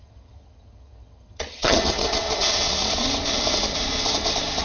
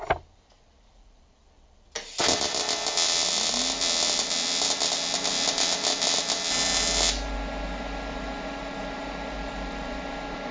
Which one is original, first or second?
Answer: second